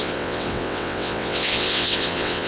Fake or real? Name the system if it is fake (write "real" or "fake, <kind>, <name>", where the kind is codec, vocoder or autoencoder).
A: fake, vocoder, WaveNeXt